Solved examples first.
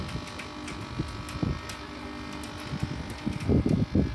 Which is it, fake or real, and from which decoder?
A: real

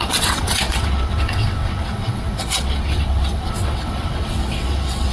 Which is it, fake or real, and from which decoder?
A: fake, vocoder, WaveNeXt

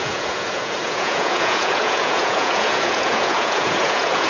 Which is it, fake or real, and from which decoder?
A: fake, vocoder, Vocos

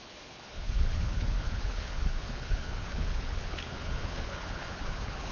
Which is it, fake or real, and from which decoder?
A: fake, codec, HILCodec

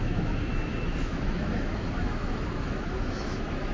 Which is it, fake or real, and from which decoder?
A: fake, autoencoder, DAC-VAE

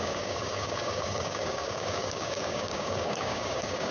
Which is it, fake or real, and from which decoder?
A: fake, codec, DAC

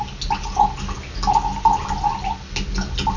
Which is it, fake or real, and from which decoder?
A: real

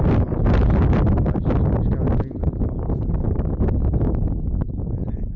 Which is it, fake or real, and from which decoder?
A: real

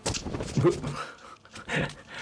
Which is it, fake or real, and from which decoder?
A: real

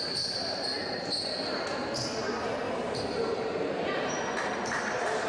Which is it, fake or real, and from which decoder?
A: fake, vocoder, BigVGAN v2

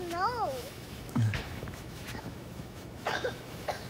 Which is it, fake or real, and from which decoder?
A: fake, autoencoder, DAC-VAE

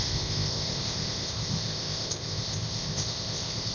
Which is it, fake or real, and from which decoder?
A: fake, codec, ZipCodec